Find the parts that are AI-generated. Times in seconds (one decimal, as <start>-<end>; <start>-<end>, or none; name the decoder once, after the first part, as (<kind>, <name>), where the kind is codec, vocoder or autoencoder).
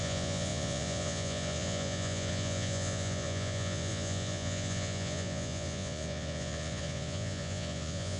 0.0-8.2 (vocoder, Vocos)